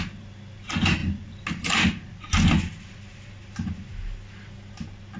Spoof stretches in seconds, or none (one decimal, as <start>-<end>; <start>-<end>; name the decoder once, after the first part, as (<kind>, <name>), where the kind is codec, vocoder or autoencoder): none